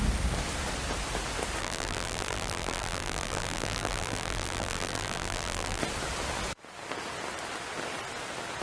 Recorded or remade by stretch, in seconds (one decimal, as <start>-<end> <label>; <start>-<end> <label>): 0.0-1.6 recorded; 1.6-5.8 remade; 5.8-8.6 recorded